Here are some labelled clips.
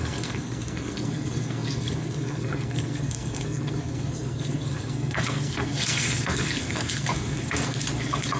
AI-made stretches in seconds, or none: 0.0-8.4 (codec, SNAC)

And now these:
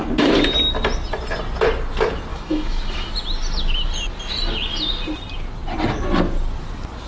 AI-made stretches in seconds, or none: 2.3-3.1 (autoencoder, DAC-VAE)

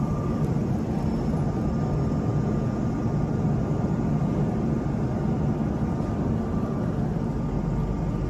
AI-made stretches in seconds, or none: 2.3-2.8 (vocoder, Vocos)

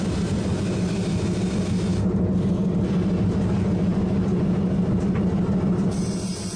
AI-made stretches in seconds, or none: none

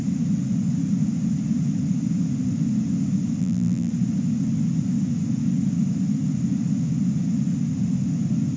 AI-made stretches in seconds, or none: 3.4-3.9 (vocoder, BigVGAN v2)

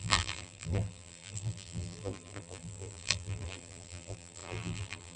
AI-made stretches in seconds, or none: 0.0-5.2 (vocoder, BigVGAN v2)

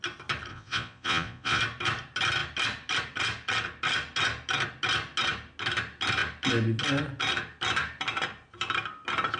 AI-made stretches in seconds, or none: 0.5-1.6 (vocoder, Vocos)